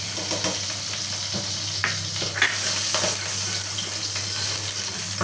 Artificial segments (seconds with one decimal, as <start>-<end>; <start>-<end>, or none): none